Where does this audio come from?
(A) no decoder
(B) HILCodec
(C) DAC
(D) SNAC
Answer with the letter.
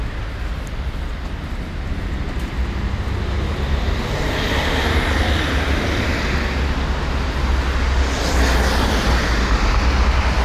A